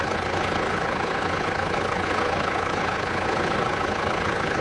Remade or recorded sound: remade